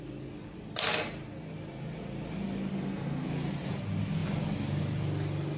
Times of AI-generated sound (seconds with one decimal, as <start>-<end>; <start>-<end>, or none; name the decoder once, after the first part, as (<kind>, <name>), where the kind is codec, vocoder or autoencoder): 2.7-3.3 (codec, SNAC)